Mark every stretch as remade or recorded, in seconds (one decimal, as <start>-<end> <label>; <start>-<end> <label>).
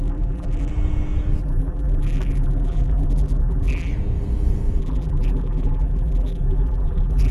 0.0-0.7 remade; 0.7-1.4 recorded; 1.4-3.9 remade; 3.9-4.8 recorded; 4.8-7.3 remade